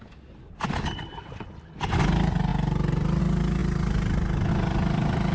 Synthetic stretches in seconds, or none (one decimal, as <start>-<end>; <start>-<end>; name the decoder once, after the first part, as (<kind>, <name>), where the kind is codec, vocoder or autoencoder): none